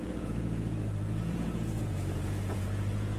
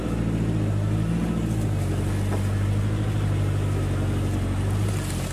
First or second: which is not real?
first